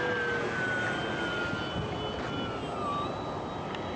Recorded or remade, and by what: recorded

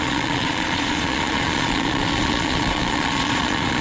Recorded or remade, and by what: remade, vocoder, Vocos